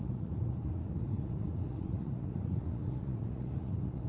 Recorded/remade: remade